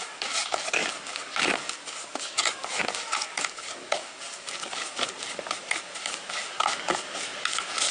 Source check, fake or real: fake